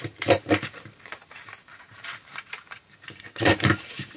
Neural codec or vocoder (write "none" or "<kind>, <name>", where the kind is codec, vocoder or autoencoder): vocoder, BigVGAN v2